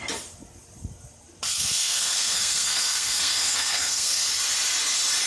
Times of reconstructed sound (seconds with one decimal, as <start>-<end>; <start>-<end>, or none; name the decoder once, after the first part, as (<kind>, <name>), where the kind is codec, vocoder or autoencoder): 1.5-4.3 (codec, SNAC)